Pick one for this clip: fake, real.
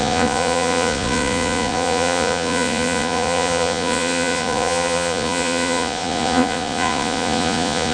fake